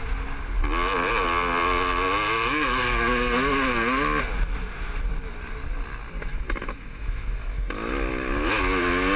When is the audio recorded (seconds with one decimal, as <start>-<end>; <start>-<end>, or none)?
0.0-6.3; 8.6-9.2